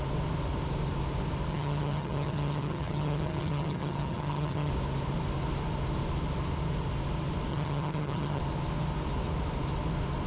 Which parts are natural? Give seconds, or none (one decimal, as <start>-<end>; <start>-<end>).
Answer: 0.0-1.5; 4.7-7.5; 8.4-10.3